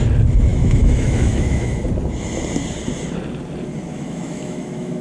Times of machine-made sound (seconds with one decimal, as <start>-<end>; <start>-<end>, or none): 0.5-1.7; 3.9-5.0